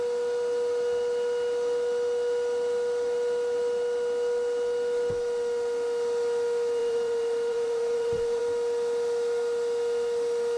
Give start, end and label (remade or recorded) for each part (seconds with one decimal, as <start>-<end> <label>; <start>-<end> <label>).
0.0-6.8 recorded; 6.8-8.4 remade; 8.4-10.6 recorded